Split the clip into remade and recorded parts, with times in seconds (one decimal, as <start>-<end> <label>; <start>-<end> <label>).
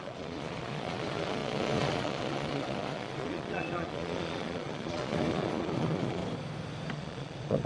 0.0-6.2 remade; 6.2-6.9 recorded; 6.9-7.7 remade